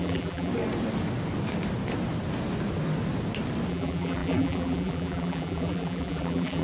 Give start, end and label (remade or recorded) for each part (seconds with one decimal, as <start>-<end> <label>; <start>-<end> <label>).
0.0-0.5 remade; 0.5-3.7 recorded; 3.7-6.6 remade